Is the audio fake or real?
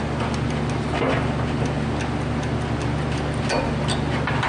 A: real